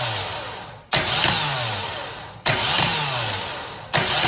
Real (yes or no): yes